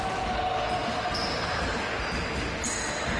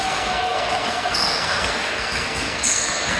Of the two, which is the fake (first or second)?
second